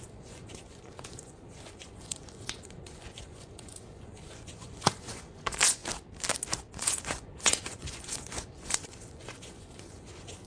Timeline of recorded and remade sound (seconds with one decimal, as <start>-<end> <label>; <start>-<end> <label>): 0.0-5.8 remade; 5.8-6.7 recorded; 6.7-10.5 remade